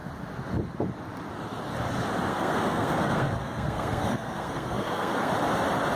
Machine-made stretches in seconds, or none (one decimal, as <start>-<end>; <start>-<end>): 2.3-5.3